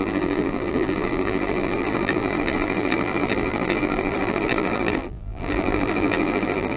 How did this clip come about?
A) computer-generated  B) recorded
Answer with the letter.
A